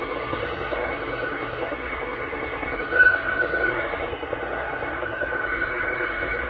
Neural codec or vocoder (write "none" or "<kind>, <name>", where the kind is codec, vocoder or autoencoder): codec, SNAC